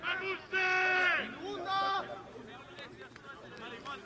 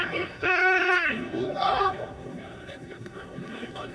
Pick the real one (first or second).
first